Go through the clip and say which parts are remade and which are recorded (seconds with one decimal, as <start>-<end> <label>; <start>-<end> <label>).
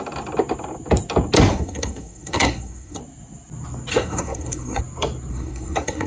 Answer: 0.0-1.5 recorded; 1.5-3.0 remade; 3.0-3.9 recorded; 3.9-4.8 remade; 4.8-5.3 recorded; 5.3-6.1 remade